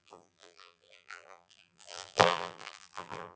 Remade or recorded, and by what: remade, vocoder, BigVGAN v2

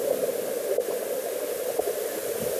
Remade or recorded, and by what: remade, vocoder, BigVGAN v2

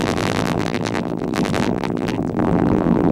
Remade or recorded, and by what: remade, vocoder, BigVGAN v2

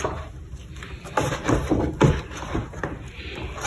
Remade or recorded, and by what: recorded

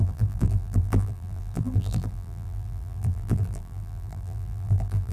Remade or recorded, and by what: remade, vocoder, BigVGAN v2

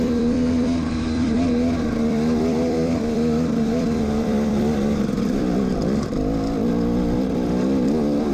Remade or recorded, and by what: remade, vocoder, BigVGAN v2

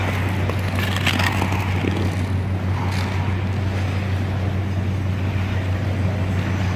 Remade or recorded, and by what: recorded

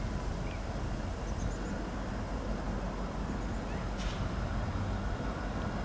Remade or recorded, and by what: recorded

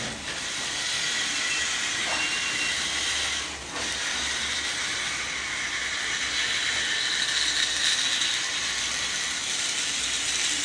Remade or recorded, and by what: recorded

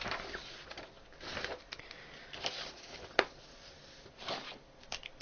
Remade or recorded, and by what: recorded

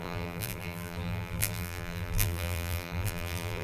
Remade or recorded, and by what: remade, vocoder, BigVGAN v2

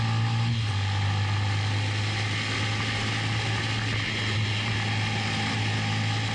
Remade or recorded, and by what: recorded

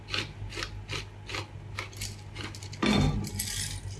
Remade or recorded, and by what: recorded